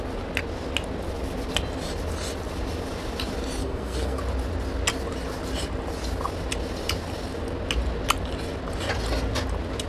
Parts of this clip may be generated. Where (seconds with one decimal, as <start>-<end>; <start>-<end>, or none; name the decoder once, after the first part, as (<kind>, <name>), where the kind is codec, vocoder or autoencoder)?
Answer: 3.6-4.2 (codec, SNAC)